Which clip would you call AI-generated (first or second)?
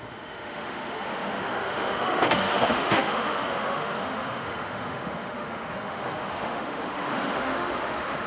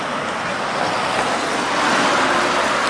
first